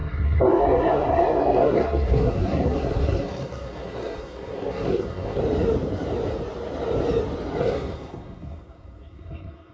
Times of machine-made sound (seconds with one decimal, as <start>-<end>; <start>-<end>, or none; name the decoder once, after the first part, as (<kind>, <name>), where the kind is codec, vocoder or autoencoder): 0.0-5.4 (codec, SNAC); 7.6-9.7